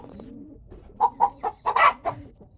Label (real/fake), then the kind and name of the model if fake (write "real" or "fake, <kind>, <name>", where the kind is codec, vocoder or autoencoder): fake, vocoder, Vocos